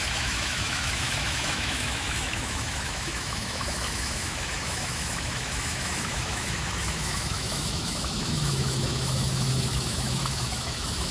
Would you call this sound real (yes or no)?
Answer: no